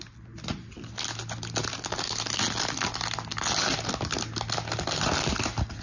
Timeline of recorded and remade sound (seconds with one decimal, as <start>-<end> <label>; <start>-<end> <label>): 0.0-5.8 recorded

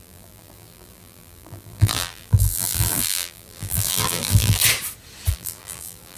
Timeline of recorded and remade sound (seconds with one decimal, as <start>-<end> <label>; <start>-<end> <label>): 0.0-4.6 remade; 4.6-5.3 recorded; 5.3-6.2 remade

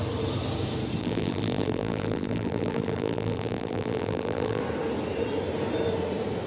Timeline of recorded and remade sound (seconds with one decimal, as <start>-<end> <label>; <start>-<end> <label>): 0.0-1.0 recorded; 1.0-4.6 remade; 4.6-6.5 recorded

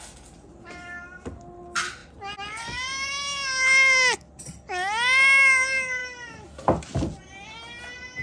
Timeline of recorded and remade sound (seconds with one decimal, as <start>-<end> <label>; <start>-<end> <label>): 0.0-8.2 recorded

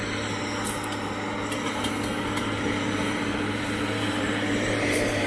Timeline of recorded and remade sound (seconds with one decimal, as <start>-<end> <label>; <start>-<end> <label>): 0.0-2.4 recorded; 2.4-5.3 remade